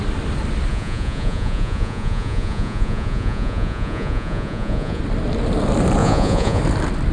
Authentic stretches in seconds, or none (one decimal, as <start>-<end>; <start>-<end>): 0.0-0.7; 5.0-6.0; 6.6-7.1